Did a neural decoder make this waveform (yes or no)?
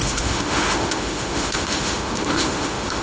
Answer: yes